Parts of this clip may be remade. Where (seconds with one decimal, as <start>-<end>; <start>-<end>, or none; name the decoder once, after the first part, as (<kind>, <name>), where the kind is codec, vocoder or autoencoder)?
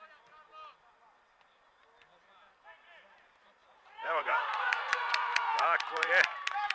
3.6-6.1 (vocoder, Vocos)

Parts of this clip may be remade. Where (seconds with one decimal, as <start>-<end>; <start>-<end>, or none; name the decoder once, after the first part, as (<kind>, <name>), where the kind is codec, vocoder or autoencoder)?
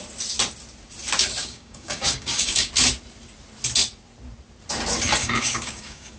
1.4-2.7 (codec, DAC); 5.2-6.2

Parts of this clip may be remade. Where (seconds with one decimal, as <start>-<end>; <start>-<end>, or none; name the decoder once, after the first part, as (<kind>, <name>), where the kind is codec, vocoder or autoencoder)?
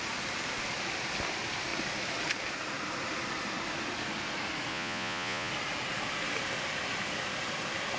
4.7-5.5 (vocoder, Vocos)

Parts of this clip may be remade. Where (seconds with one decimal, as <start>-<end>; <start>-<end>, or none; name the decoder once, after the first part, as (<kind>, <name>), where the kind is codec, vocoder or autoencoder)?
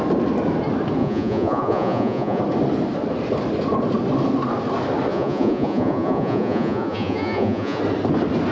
1.0-2.4 (vocoder, Vocos); 5.1-7.8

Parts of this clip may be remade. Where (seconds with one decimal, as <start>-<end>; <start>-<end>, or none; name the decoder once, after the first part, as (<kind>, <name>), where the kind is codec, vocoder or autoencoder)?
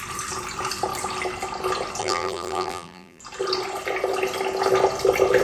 2.0-3.2 (vocoder, BigVGAN v2)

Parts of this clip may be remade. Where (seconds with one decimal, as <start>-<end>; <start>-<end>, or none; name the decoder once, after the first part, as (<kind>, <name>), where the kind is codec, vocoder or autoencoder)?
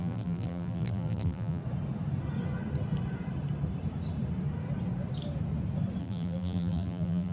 0.0-1.6 (vocoder, BigVGAN v2); 6.0-7.3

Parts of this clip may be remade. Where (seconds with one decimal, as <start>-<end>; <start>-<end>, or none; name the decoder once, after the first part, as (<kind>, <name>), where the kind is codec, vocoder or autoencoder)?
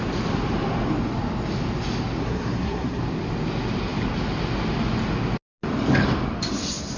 2.2-3.0 (codec, SNAC)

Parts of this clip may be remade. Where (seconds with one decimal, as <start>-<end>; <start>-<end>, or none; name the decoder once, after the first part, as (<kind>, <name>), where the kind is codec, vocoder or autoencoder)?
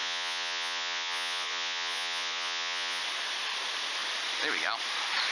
0.0-3.0 (vocoder, Vocos)